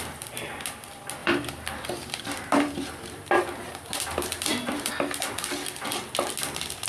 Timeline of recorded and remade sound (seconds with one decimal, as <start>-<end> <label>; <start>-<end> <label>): 0.0-1.2 recorded; 1.2-4.9 remade; 4.9-6.9 recorded